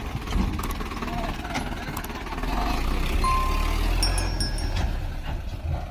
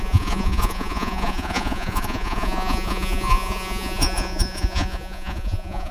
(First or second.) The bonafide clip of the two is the first